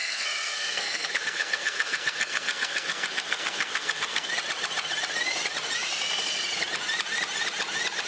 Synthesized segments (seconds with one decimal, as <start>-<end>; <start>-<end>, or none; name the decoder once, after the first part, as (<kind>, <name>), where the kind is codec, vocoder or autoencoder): 0.0-4.3 (codec, SNAC)